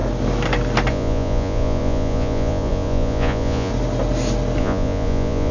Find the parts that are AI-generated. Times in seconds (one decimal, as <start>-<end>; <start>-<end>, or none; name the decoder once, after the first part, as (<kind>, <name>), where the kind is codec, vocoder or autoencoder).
0.9-3.7 (vocoder, Vocos); 4.6-5.5